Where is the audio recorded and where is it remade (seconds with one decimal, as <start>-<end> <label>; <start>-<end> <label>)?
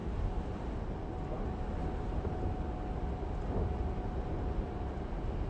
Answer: 0.0-5.5 recorded